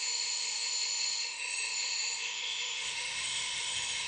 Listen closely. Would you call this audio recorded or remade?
remade